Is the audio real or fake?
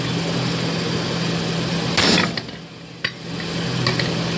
real